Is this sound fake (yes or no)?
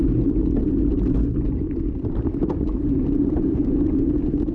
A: no